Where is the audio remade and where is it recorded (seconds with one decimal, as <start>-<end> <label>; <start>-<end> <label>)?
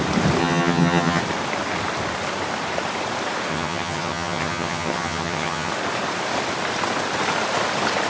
0.0-0.4 recorded; 0.4-1.2 remade; 1.2-3.5 recorded; 3.5-5.7 remade; 5.7-8.1 recorded